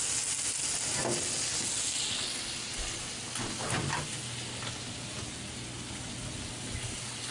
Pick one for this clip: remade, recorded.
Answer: recorded